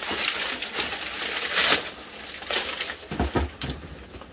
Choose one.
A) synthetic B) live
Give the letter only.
B